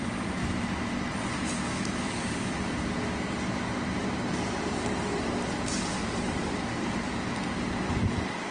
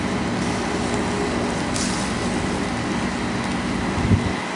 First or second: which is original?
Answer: second